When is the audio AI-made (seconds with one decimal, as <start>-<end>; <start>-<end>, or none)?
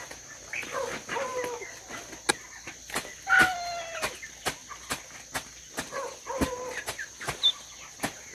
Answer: 4.6-7.1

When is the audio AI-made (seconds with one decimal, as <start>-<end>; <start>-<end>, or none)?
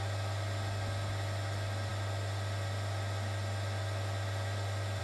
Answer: none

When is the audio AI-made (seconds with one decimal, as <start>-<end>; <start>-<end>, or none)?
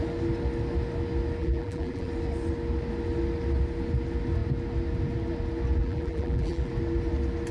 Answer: 1.4-2.1; 5.8-6.7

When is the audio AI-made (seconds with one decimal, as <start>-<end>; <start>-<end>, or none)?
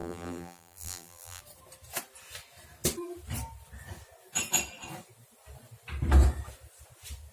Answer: 0.0-1.4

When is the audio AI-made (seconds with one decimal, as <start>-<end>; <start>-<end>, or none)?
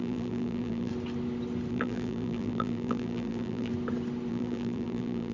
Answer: 0.0-0.9; 1.7-3.7; 4.3-5.3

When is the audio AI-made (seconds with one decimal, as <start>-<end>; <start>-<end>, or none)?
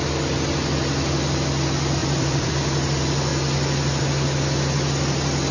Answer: 2.0-2.5